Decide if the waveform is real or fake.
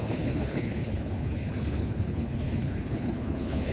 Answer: fake